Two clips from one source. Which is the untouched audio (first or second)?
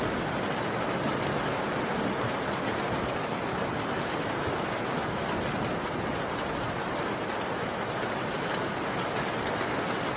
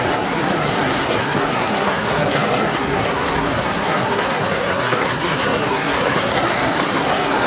first